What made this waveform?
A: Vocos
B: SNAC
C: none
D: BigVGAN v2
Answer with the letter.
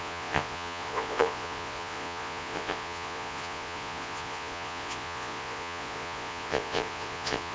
A